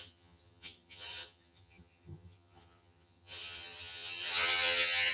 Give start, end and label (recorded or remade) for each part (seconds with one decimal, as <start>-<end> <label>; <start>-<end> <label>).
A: 0.0-5.1 remade